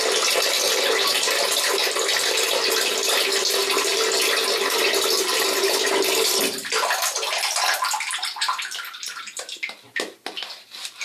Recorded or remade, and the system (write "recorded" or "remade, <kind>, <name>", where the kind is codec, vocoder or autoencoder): recorded